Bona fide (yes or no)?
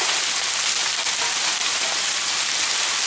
yes